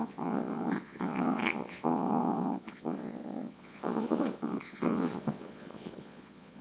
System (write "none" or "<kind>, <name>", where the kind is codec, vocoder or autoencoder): vocoder, Vocos